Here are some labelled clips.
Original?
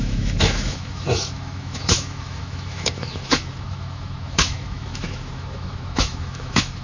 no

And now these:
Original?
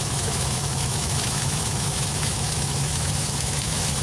no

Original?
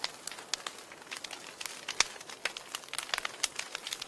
yes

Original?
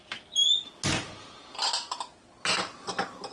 yes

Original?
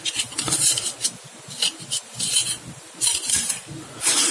yes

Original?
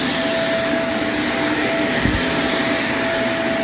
yes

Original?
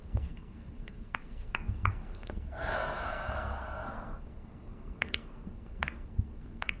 no